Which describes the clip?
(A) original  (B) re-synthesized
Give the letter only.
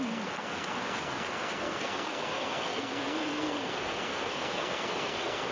B